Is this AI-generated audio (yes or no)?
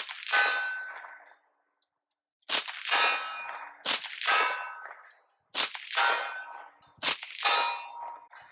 no